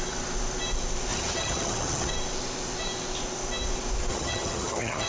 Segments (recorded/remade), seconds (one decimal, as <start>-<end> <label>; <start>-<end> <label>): 0.0-1.1 recorded; 1.1-2.1 remade; 2.1-4.1 recorded; 4.1-5.1 remade